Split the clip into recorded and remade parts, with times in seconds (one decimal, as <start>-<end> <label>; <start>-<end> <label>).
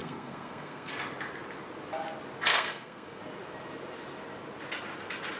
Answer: 0.0-0.9 remade; 0.9-2.5 recorded; 2.5-3.2 remade; 3.2-5.4 recorded